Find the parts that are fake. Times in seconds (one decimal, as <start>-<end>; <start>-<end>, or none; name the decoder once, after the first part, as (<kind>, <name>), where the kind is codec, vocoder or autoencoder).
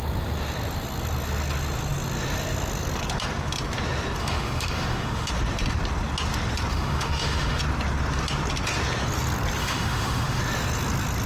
4.2-5.3 (autoencoder, DAC-VAE); 6.7-7.6; 9.6-10.4